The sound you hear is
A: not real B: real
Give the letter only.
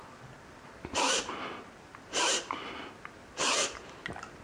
B